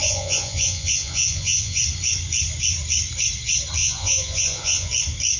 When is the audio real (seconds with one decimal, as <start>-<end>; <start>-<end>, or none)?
1.8-3.8; 4.9-5.4